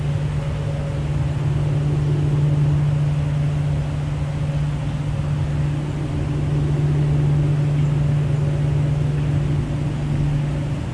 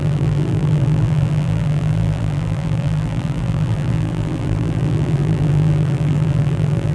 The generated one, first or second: second